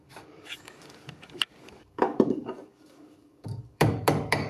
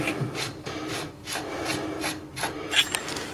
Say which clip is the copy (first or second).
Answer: first